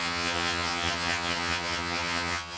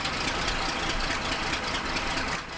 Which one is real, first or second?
second